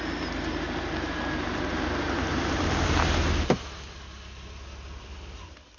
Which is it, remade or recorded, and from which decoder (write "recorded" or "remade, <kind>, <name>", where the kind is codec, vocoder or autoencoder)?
recorded